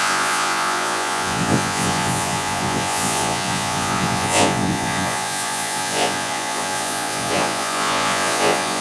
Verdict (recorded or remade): remade